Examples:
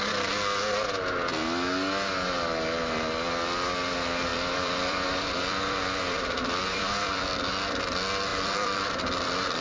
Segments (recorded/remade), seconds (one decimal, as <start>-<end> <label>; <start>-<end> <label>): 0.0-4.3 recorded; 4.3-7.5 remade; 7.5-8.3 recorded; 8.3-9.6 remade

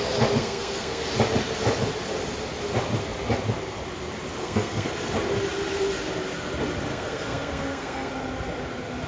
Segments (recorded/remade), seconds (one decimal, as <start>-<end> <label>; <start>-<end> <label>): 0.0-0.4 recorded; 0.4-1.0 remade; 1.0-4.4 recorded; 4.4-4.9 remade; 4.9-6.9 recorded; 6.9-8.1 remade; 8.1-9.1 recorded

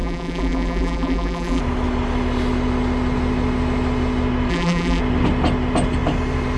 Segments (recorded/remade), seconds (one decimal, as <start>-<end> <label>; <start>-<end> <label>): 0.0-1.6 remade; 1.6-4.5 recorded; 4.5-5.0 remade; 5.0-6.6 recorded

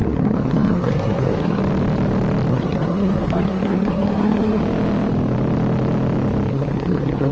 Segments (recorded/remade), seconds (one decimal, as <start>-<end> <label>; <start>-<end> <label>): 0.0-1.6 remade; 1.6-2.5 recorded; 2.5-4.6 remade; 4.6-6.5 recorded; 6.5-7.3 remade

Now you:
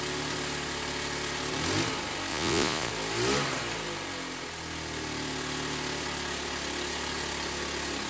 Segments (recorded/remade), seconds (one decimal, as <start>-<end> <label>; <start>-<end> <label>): 0.0-2.3 recorded; 2.3-2.9 remade; 2.9-8.1 recorded